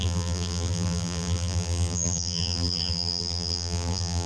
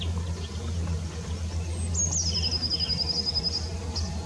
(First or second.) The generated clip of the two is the first